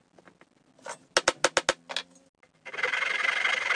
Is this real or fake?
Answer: real